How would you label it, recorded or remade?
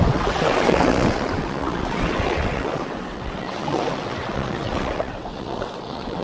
remade